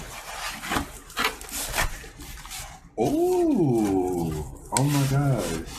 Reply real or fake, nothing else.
real